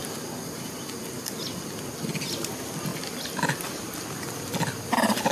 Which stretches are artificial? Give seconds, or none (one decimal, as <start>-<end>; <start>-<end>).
2.9-4.4